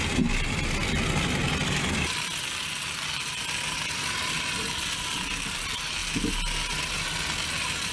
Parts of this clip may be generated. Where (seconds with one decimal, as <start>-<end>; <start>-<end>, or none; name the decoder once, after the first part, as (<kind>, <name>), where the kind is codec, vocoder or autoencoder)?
none